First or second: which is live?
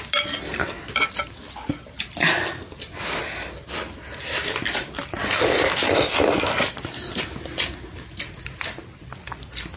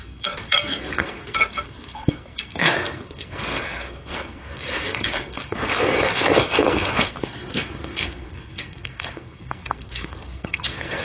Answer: first